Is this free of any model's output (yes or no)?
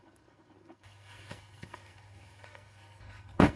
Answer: no